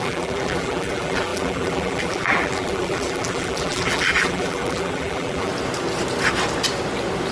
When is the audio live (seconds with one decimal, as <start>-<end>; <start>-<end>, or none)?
5.5-7.3